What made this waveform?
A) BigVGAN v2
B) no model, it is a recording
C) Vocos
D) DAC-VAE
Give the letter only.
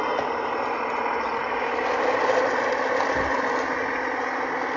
B